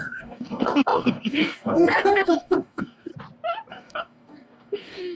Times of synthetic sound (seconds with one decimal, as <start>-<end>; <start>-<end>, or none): 0.0-3.1; 3.7-5.1